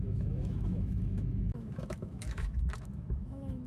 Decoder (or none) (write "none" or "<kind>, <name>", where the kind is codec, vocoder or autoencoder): autoencoder, DAC-VAE